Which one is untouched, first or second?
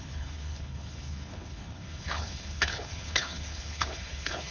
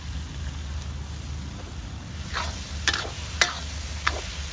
second